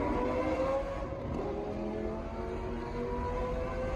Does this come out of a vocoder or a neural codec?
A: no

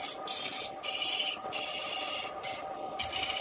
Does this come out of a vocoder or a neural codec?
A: no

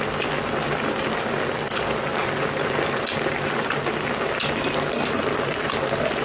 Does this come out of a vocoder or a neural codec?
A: no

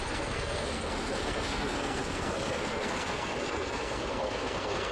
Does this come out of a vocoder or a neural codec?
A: yes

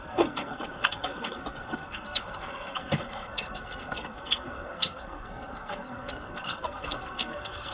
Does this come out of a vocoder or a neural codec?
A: yes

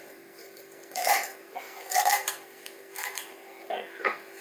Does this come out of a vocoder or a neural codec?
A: yes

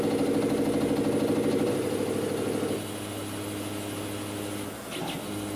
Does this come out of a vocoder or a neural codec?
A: no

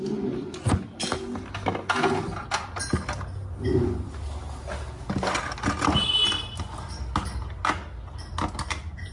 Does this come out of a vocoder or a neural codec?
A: no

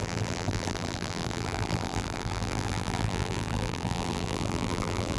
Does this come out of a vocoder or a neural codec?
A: yes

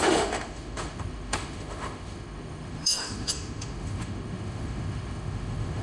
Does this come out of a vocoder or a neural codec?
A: yes